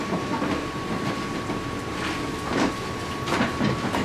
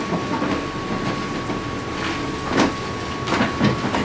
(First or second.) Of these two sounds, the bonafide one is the second